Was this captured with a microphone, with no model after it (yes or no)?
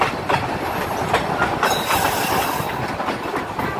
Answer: yes